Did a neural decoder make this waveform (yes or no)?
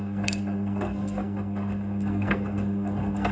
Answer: yes